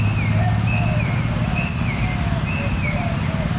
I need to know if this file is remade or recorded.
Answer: recorded